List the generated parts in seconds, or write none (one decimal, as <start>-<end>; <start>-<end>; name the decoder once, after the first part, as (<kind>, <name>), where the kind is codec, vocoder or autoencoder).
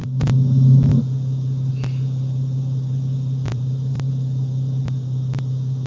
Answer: 3.5-4.1 (vocoder, BigVGAN v2)